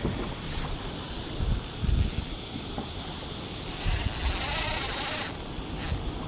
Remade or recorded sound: recorded